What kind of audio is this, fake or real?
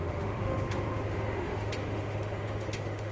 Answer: fake